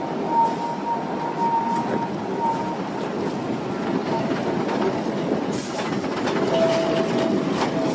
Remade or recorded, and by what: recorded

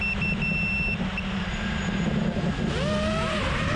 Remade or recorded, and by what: recorded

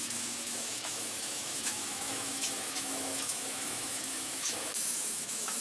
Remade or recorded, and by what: remade, autoencoder, DAC-VAE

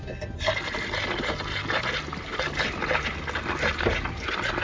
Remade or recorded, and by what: recorded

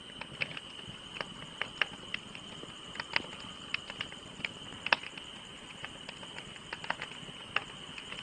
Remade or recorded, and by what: recorded